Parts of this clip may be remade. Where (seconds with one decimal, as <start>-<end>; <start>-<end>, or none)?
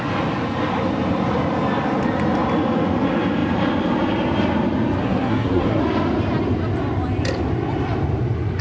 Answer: 5.0-5.8